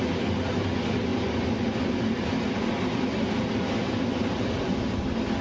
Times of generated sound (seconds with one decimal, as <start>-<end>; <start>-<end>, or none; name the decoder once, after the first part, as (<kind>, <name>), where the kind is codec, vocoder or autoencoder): none